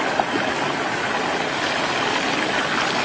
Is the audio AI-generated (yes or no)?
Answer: no